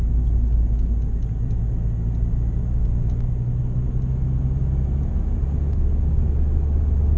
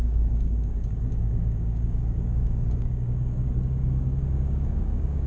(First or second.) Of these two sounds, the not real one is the second